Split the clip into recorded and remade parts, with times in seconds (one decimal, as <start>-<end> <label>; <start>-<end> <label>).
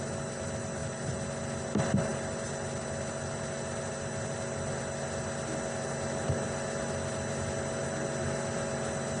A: 0.0-9.2 recorded